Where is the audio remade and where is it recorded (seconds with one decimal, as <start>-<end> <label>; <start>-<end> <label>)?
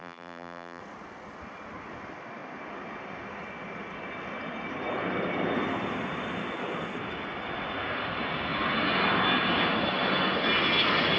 0.0-0.8 remade; 0.8-11.2 recorded